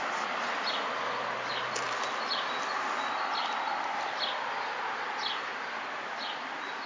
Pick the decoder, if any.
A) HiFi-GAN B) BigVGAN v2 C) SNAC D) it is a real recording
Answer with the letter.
D